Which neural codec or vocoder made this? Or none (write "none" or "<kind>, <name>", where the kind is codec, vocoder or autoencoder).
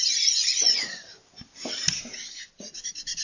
none